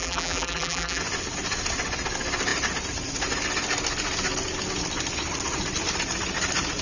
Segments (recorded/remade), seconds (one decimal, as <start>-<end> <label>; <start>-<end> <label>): 0.0-1.0 remade; 1.0-6.8 recorded